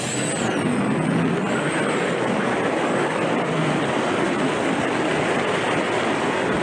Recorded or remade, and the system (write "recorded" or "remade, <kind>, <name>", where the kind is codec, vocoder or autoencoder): recorded